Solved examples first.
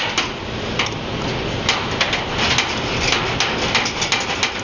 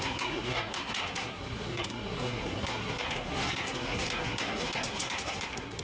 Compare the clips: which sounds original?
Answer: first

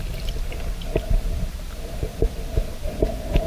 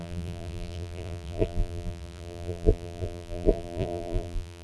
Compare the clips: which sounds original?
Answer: first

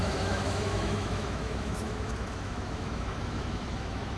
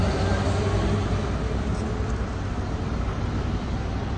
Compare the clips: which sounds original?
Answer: second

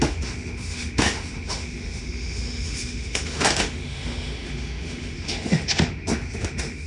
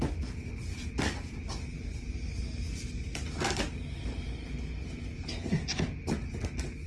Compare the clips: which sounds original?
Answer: second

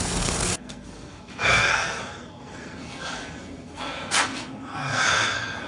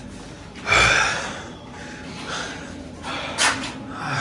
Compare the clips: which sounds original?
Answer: second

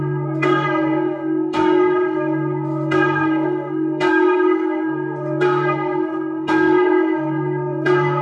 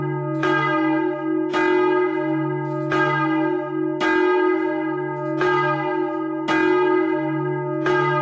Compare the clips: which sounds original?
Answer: second